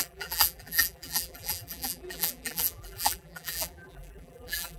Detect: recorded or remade remade